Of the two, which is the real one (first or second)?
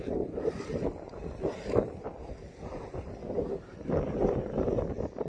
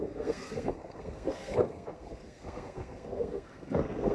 first